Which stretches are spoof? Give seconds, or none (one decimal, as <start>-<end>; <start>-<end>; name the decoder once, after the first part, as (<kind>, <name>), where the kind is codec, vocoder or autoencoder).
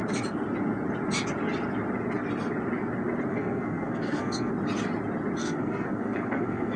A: 3.3-4.5 (codec, SNAC); 5.4-6.8